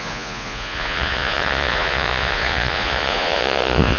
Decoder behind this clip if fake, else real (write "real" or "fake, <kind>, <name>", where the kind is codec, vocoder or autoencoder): fake, vocoder, Vocos